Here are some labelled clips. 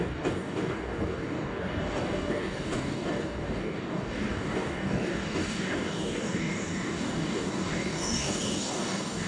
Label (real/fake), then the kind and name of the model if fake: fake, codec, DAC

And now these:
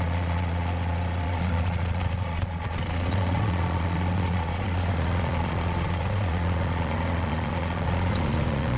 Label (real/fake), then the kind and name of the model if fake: fake, vocoder, Vocos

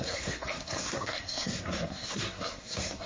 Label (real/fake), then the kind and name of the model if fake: fake, codec, SNAC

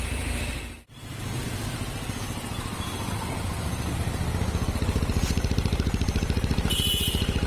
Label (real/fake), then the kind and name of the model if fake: real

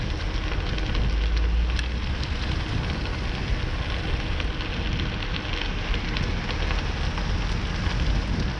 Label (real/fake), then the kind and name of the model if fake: real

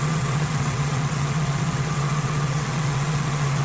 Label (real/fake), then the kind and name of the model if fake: fake, vocoder, WaveNeXt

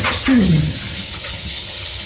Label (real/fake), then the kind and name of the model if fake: fake, vocoder, HiFi-GAN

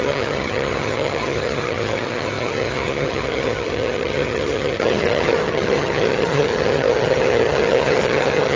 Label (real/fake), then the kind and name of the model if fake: fake, vocoder, HiFi-GAN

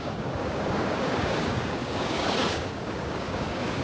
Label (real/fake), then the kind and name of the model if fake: fake, codec, DAC